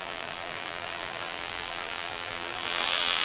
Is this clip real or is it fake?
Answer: fake